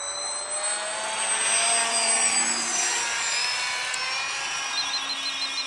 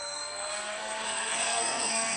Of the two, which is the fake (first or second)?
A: second